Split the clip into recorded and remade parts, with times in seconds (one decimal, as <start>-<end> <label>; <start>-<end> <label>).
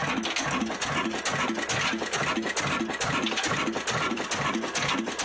0.0-3.1 recorded; 3.1-5.2 remade